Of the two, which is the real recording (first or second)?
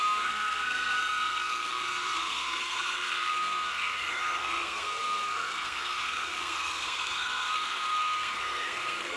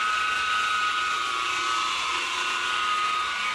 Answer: second